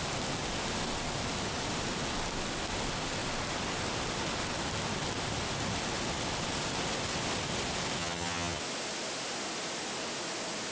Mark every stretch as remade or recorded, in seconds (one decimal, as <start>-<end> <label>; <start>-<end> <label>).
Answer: 0.0-8.0 recorded; 8.0-8.6 remade; 8.6-10.7 recorded